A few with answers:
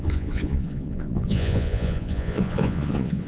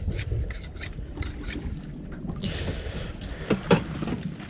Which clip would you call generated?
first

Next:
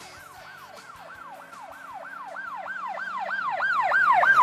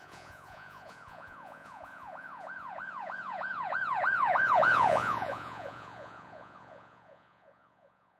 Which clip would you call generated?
second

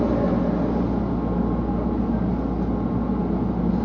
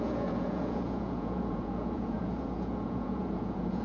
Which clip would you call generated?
second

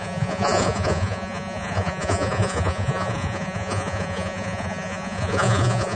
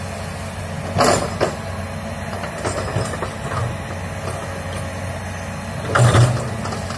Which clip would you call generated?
first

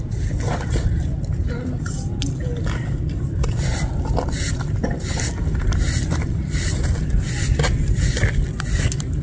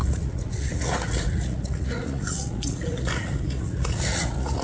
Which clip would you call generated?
second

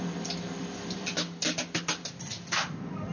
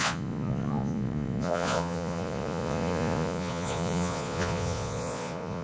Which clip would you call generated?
second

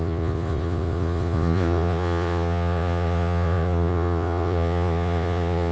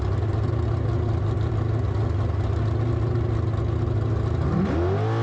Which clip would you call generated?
first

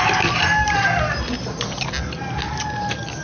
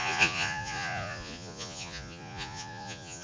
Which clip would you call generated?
second